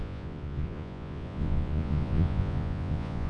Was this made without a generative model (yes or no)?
no